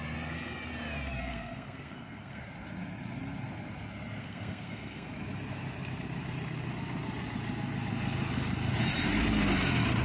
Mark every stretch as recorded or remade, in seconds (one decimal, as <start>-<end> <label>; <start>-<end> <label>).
0.0-1.2 recorded; 1.2-2.4 remade; 2.4-4.2 recorded; 4.2-5.1 remade; 5.1-10.0 recorded